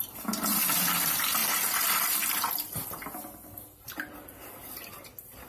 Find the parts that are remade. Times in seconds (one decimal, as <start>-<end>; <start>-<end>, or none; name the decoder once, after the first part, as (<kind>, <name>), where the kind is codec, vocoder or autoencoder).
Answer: none